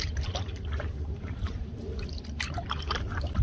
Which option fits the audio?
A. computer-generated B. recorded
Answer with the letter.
A